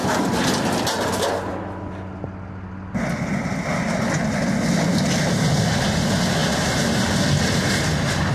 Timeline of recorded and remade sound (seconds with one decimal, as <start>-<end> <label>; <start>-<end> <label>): 0.0-8.3 recorded